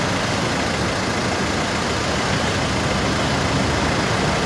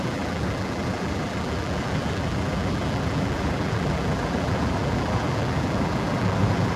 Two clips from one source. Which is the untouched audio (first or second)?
first